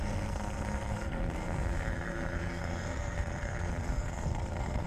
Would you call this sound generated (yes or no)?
yes